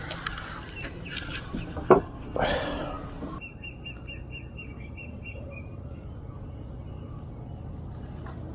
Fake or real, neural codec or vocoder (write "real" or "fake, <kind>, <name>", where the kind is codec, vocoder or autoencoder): real